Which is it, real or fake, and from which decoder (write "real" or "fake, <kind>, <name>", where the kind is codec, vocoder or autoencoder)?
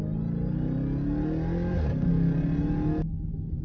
real